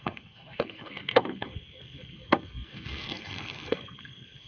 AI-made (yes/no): yes